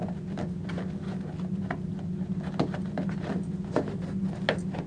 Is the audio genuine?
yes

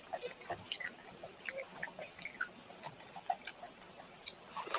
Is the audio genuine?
yes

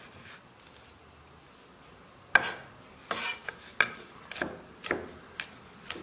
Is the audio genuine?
yes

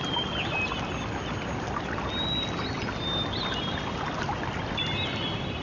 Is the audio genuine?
yes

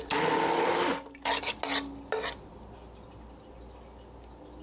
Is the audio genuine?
yes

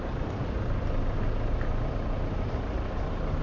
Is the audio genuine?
yes